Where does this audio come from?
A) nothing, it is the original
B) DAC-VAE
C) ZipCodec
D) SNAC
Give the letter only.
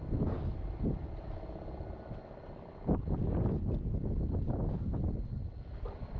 A